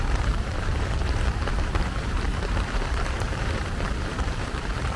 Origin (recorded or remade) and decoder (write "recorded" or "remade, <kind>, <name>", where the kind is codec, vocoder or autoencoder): remade, vocoder, BigVGAN v2